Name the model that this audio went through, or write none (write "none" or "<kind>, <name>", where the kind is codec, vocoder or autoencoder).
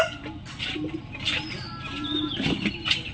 none